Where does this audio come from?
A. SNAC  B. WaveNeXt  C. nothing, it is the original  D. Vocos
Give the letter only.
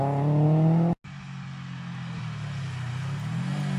C